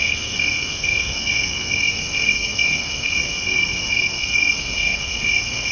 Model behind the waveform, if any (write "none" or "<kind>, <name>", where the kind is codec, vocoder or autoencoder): codec, SNAC